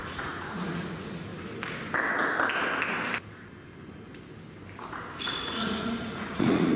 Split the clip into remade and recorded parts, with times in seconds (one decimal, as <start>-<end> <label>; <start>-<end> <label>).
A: 0.0-1.3 remade; 1.3-5.2 recorded; 5.2-6.8 remade